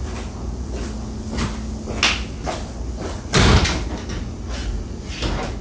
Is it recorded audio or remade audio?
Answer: recorded